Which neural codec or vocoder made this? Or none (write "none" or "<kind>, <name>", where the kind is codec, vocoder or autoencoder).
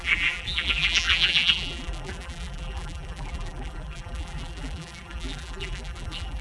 vocoder, BigVGAN v2